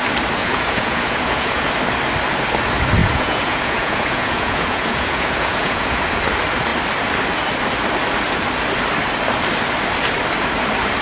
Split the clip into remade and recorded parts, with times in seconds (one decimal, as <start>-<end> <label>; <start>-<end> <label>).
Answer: 0.0-0.4 recorded; 0.4-1.7 remade; 1.7-3.0 recorded; 3.0-6.0 remade; 6.0-11.0 recorded